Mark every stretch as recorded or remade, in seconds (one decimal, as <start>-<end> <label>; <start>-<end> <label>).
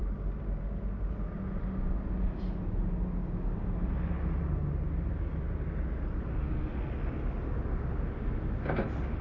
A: 0.0-6.3 recorded; 6.3-6.8 remade; 6.8-9.2 recorded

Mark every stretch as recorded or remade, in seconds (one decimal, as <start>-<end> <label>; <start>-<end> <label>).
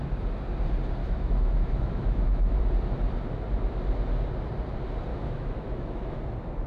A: 0.0-1.0 recorded; 1.0-2.6 remade; 2.6-5.1 recorded; 5.1-6.2 remade; 6.2-6.7 recorded